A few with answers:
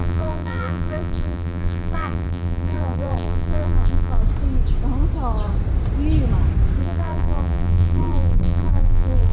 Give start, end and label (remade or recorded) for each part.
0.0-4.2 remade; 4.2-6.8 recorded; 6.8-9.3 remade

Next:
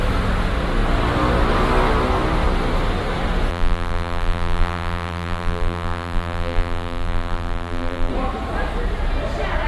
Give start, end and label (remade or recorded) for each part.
0.0-3.5 recorded; 3.5-8.1 remade; 8.1-9.7 recorded

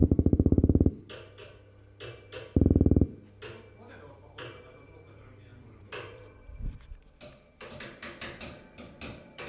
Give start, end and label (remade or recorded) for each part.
0.0-3.7 recorded; 3.7-9.5 remade

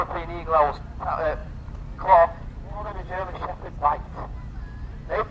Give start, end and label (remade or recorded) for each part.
0.0-1.4 recorded; 1.4-4.6 remade; 4.6-5.3 recorded